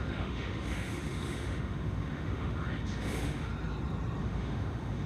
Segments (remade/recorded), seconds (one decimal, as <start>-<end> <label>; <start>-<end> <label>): 0.0-3.5 remade; 3.5-4.2 recorded; 4.2-5.1 remade